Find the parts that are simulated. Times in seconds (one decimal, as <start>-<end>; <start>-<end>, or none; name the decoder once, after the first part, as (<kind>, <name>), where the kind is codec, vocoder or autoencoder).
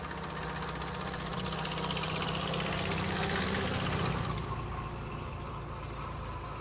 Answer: none